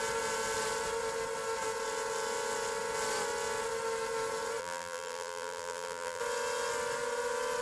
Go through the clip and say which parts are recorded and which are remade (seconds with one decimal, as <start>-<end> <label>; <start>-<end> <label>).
0.0-4.6 recorded; 4.6-6.2 remade; 6.2-7.6 recorded